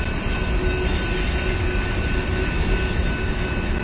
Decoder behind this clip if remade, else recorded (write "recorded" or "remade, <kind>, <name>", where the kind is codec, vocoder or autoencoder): recorded